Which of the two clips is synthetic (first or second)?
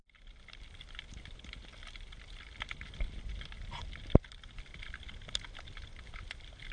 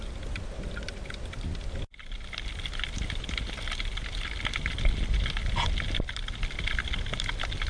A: first